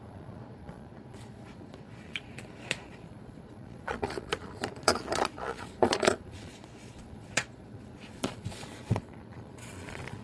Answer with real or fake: fake